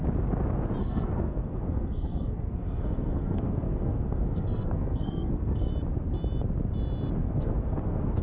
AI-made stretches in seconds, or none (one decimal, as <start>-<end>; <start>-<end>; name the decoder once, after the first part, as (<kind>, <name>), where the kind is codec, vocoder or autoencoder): 0.8-5.7 (codec, SNAC); 7.2-8.2